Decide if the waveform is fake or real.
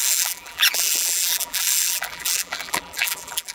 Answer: fake